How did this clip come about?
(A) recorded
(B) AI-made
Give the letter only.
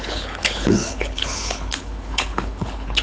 B